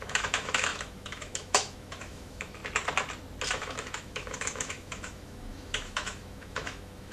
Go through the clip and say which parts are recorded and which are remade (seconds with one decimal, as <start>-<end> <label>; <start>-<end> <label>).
0.0-2.6 remade; 2.6-3.5 recorded; 3.5-7.1 remade